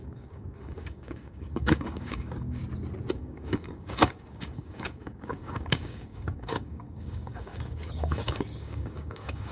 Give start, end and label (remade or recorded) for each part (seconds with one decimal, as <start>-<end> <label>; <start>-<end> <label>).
0.0-2.6 remade; 2.6-3.1 recorded; 3.1-9.5 remade